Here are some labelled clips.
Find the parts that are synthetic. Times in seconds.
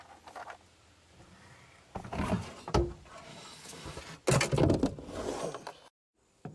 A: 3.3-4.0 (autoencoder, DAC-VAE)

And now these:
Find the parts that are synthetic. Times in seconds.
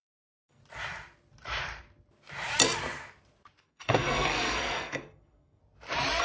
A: 0.0-0.6 (codec, SNAC); 3.6-5.6